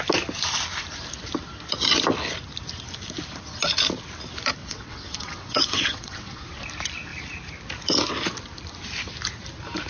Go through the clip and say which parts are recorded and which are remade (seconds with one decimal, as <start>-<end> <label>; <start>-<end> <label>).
0.0-4.6 recorded; 4.6-6.5 remade; 6.5-9.9 recorded